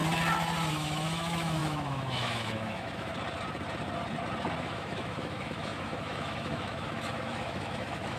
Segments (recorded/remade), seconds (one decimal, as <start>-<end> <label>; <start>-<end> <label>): 0.0-0.7 recorded; 0.7-3.1 remade; 3.1-4.6 recorded; 4.6-8.2 remade